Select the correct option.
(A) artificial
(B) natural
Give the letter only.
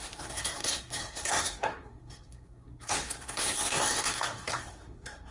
A